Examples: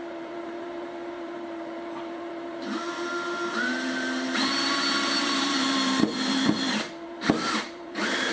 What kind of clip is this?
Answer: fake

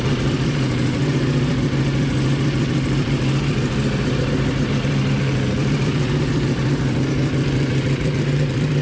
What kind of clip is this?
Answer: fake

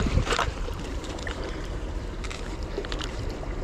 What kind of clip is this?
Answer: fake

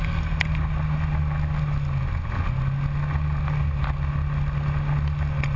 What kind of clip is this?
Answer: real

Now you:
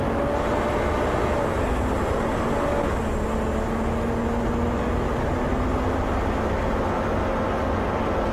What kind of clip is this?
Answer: real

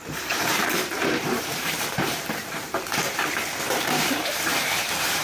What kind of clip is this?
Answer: fake